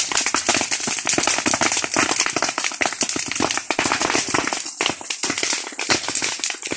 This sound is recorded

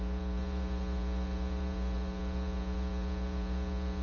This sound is remade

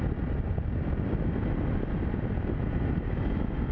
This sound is recorded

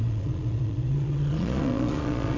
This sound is remade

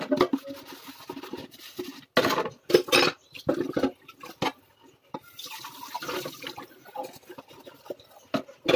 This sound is recorded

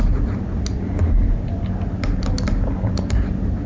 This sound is recorded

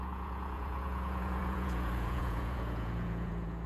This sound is remade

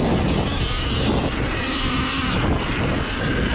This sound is recorded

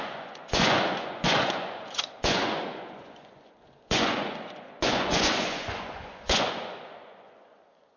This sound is remade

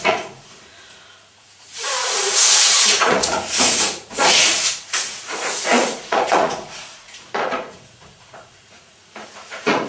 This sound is remade